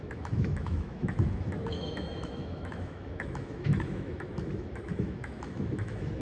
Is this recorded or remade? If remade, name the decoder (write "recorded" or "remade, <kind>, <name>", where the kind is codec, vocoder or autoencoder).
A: remade, autoencoder, DAC-VAE